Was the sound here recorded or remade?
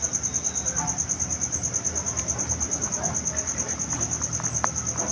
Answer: recorded